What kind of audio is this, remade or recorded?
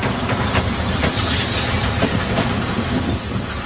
remade